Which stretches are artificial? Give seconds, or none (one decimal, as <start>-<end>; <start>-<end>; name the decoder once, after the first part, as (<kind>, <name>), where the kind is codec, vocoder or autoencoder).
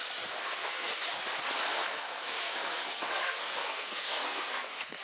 0.4-0.9 (codec, SNAC); 1.7-5.0